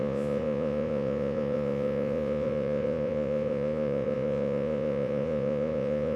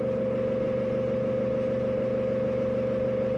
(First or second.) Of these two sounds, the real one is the second